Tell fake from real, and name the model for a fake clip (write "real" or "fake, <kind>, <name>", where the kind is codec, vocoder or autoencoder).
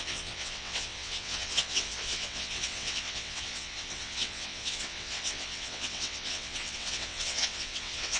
fake, vocoder, WaveNeXt